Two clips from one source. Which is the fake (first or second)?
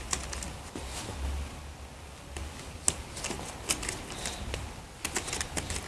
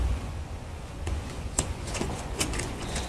second